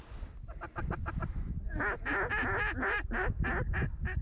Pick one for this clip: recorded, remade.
recorded